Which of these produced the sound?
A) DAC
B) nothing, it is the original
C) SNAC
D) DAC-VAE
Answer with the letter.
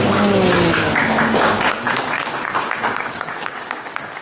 A